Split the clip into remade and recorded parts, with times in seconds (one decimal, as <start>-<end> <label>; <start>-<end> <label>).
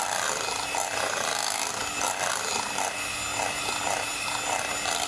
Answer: 0.0-5.1 recorded